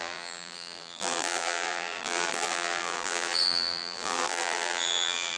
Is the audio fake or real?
fake